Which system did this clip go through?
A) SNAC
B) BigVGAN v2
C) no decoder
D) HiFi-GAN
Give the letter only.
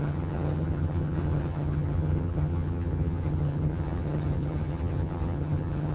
D